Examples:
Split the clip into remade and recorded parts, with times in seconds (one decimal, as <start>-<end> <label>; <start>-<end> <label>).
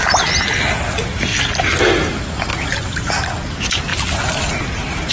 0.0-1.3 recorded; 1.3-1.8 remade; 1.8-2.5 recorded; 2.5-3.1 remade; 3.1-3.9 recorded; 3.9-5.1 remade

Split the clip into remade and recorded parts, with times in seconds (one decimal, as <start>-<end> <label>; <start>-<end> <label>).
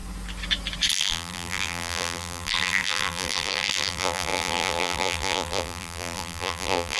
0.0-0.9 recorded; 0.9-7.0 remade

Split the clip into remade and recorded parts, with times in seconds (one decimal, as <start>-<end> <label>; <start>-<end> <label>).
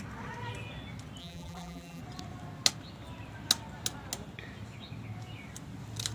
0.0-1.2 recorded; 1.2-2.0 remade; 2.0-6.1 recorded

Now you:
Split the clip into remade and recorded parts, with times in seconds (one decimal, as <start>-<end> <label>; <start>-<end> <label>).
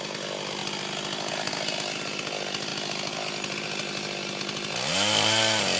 0.0-5.8 recorded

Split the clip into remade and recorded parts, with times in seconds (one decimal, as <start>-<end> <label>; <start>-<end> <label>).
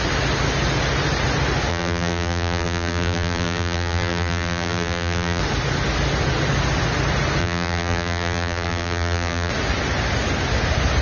0.0-1.7 recorded; 1.7-5.4 remade; 5.4-7.4 recorded; 7.4-9.5 remade; 9.5-11.0 recorded